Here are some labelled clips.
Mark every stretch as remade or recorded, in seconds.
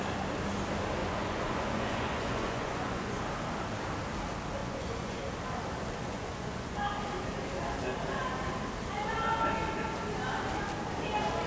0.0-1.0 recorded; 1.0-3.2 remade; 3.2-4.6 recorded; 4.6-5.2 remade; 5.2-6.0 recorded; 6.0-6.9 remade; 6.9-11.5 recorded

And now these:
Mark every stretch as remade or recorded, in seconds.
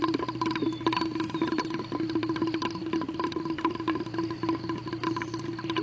0.0-5.8 recorded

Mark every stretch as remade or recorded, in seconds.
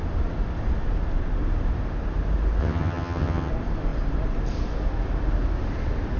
0.0-2.6 recorded; 2.6-3.5 remade; 3.5-6.2 recorded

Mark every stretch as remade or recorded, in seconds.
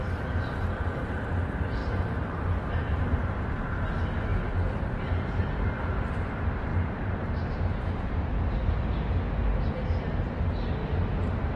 0.0-1.8 recorded; 1.8-3.5 remade; 3.5-4.3 recorded; 4.3-5.4 remade; 5.4-6.7 recorded; 6.7-8.9 remade; 8.9-11.6 recorded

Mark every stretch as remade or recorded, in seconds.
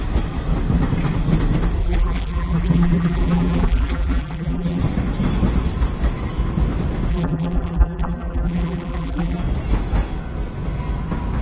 0.0-1.8 recorded; 1.8-4.8 remade; 4.8-7.1 recorded; 7.1-9.4 remade; 9.4-11.4 recorded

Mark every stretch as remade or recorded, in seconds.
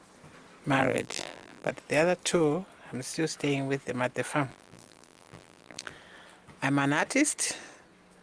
0.0-0.8 recorded; 0.8-1.7 remade; 1.7-4.5 recorded; 4.5-5.9 remade; 5.9-8.2 recorded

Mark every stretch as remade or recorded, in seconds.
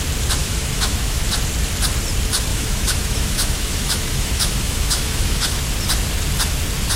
0.0-0.4 recorded; 0.4-1.2 remade; 1.2-2.5 recorded; 2.5-5.6 remade; 5.6-7.0 recorded